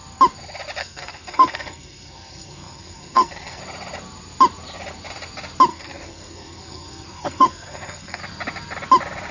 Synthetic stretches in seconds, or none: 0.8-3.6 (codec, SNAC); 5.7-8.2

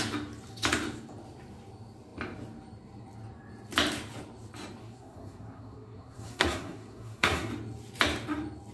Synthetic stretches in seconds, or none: 4.8-7.5 (codec, SNAC)

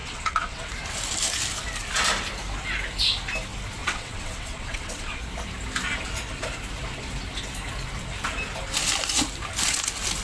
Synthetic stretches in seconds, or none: 0.0-0.7 (vocoder, WaveNeXt); 3.8-5.2

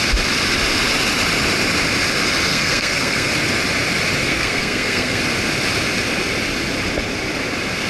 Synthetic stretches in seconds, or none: 2.5-3.3 (codec, SNAC); 4.2-5.2